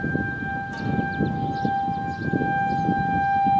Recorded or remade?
recorded